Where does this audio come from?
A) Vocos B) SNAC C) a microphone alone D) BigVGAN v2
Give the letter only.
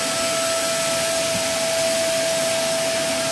C